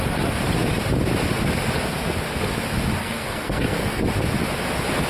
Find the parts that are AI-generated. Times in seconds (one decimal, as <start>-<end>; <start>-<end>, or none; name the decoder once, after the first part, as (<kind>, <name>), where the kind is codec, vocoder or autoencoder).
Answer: 3.0-4.0 (codec, SNAC)